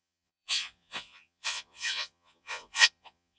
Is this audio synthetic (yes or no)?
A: yes